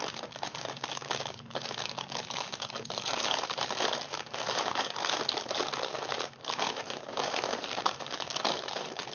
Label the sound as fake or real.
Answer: fake